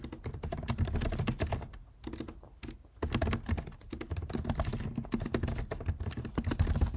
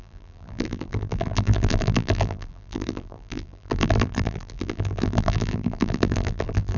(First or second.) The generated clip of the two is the second